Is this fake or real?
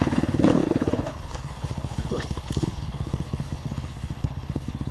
fake